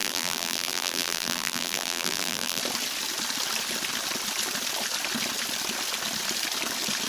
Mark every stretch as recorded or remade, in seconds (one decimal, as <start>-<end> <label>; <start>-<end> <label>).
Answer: 0.0-2.6 remade; 2.6-7.1 recorded